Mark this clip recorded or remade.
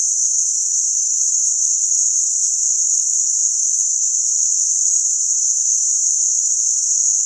remade